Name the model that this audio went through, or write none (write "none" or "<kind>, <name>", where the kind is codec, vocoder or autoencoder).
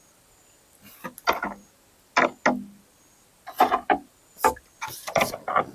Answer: none